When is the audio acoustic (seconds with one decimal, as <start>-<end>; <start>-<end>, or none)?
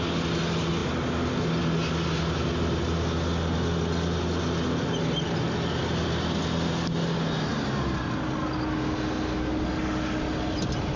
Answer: 0.0-11.0